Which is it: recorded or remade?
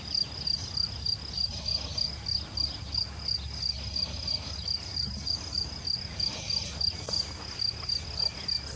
recorded